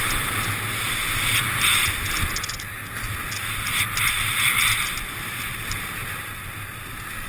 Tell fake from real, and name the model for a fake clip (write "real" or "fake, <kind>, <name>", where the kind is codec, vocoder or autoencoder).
real